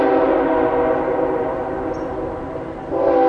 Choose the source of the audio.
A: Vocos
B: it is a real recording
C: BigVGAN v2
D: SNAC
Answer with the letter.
B